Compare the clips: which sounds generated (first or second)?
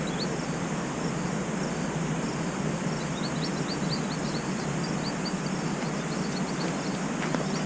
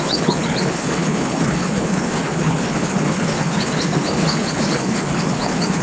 second